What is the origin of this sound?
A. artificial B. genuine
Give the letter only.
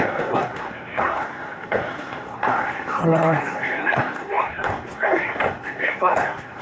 A